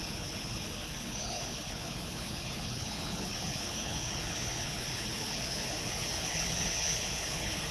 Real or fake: fake